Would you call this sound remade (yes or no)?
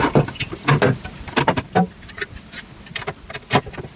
no